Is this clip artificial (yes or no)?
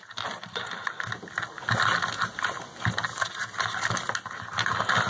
no